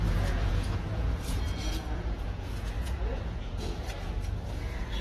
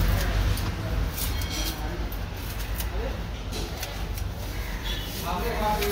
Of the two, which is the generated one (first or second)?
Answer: first